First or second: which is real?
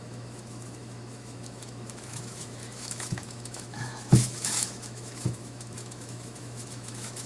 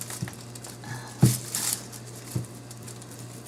second